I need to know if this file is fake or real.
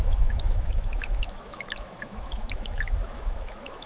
fake